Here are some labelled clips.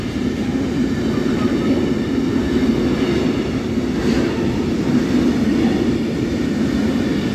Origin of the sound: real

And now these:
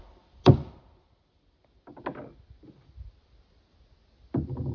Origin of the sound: real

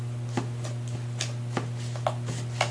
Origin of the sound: real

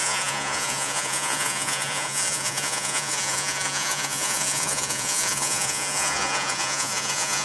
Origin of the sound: fake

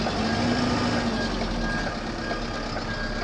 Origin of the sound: real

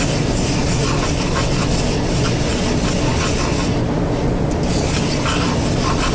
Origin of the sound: real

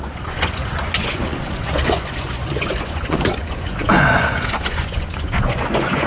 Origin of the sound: fake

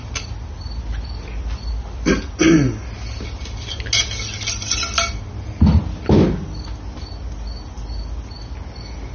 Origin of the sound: real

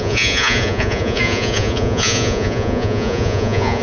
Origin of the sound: fake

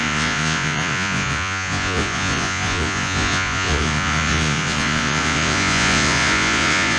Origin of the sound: fake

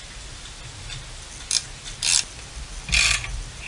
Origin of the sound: real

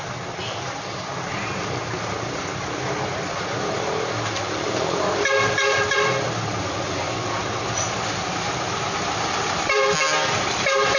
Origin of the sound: real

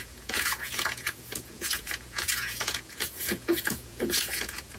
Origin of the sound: fake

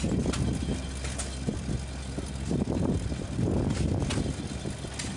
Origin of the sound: real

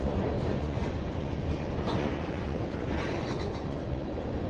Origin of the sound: fake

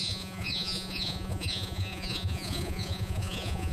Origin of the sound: fake